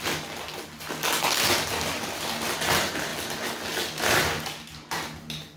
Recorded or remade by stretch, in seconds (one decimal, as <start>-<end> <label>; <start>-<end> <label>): 0.0-5.6 recorded